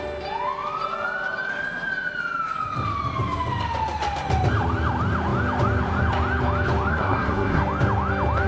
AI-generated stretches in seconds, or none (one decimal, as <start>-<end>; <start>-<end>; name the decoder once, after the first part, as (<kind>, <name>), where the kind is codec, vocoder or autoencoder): 6.9-7.6 (codec, SNAC)

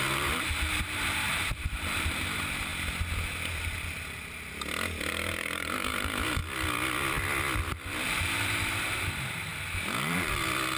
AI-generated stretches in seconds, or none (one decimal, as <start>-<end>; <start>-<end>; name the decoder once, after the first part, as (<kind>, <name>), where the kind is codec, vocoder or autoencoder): 0.0-2.7 (vocoder, BigVGAN v2); 5.1-6.4; 7.7-10.8